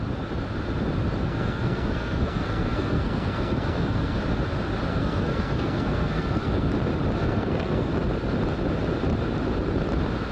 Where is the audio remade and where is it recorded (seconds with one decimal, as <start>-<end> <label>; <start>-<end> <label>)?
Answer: 0.0-1.2 recorded; 1.2-4.2 remade; 4.2-4.9 recorded; 4.9-6.7 remade; 6.7-7.2 recorded; 7.2-7.9 remade; 7.9-10.3 recorded